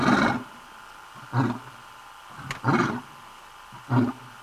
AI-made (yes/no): no